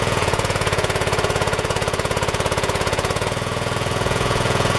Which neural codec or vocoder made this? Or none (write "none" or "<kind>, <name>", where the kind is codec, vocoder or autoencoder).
vocoder, Vocos